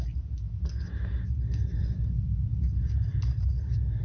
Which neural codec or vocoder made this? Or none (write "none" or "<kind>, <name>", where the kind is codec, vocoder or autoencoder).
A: none